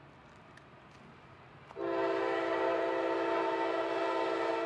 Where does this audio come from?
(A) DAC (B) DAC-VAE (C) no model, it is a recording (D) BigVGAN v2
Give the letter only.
C